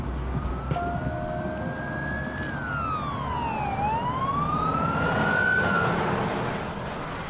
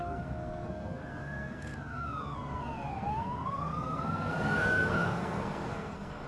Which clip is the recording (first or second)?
first